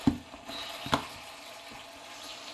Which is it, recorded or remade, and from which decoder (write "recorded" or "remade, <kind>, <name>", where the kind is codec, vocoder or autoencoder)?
recorded